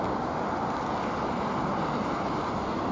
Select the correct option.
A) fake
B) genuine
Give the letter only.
B